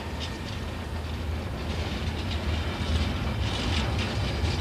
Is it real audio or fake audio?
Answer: real